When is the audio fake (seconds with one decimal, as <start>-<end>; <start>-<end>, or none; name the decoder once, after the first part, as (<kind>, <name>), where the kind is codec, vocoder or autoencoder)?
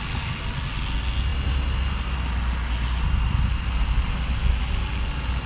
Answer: none